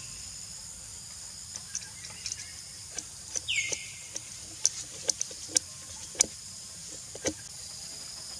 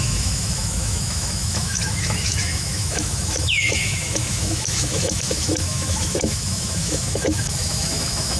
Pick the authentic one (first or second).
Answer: first